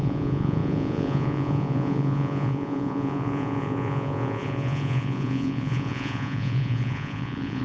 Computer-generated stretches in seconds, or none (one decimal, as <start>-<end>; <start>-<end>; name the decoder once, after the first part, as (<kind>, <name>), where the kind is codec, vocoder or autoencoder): 0.0-7.6 (vocoder, Vocos)